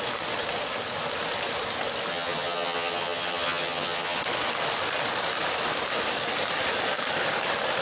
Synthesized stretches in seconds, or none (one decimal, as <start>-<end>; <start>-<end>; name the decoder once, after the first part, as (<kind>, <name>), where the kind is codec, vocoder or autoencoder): 2.1-4.2 (vocoder, HiFi-GAN)